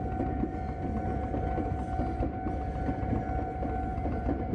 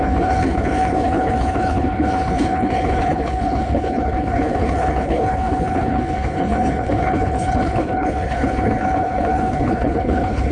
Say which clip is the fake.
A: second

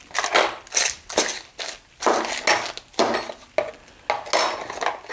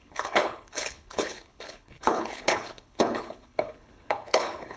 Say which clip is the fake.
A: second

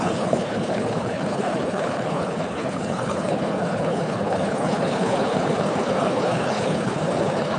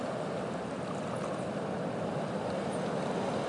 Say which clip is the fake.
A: first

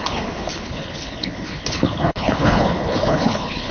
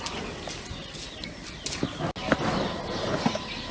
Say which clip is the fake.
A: first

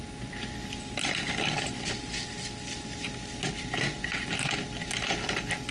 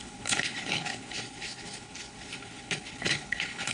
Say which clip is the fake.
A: second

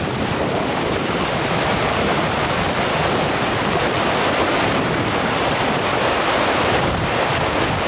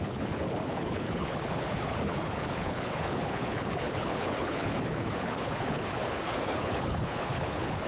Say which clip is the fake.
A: second